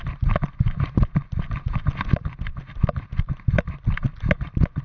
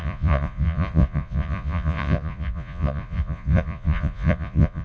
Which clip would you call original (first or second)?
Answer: first